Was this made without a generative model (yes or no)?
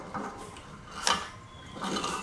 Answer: yes